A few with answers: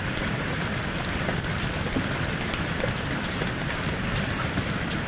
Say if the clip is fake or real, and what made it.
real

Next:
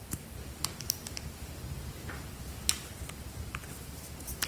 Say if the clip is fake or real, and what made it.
real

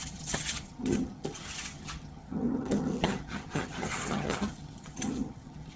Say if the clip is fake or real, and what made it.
fake, vocoder, HiFi-GAN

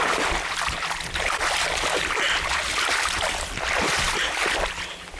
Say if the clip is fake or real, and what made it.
real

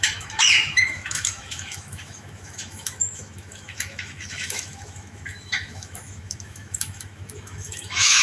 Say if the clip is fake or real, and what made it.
fake, autoencoder, DAC-VAE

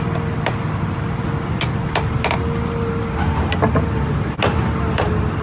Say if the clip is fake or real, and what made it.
real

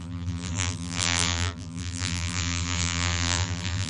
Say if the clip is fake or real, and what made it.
fake, vocoder, BigVGAN v2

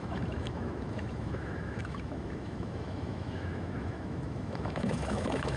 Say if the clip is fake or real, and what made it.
fake, autoencoder, DAC-VAE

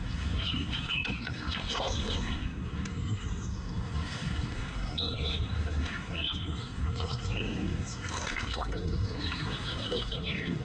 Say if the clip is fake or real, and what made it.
fake, codec, SNAC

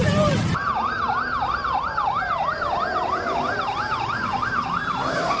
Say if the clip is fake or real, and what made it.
fake, vocoder, BigVGAN v2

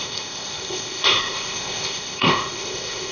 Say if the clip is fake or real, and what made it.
fake, codec, ZipCodec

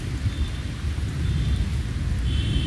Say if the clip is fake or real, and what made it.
real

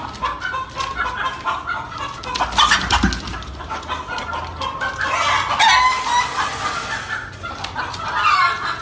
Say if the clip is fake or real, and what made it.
real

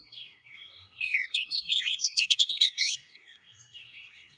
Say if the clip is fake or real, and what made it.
fake, codec, SNAC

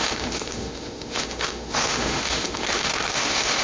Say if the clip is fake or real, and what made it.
fake, autoencoder, DAC-VAE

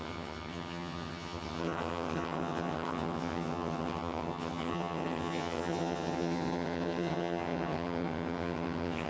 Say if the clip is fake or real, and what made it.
fake, vocoder, HiFi-GAN